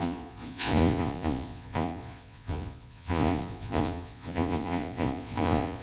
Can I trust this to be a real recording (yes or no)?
no